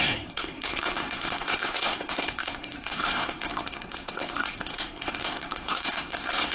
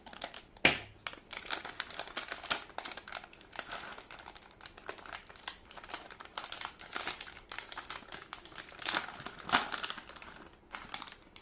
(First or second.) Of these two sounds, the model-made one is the first